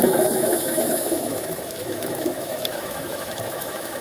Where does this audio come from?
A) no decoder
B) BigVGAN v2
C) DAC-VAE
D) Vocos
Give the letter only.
C